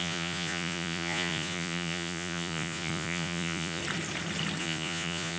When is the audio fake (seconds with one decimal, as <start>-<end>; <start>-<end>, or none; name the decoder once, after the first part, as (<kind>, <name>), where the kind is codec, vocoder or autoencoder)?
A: 0.0-3.8 (vocoder, Vocos); 4.6-5.4